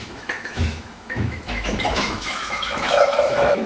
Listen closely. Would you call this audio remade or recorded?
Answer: remade